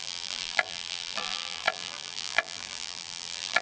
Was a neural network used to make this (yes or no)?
yes